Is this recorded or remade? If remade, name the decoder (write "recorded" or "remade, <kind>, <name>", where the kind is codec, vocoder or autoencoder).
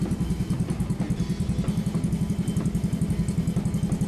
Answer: recorded